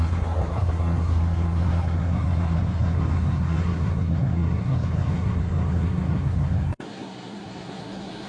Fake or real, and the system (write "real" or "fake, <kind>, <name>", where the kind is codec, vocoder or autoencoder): fake, codec, SNAC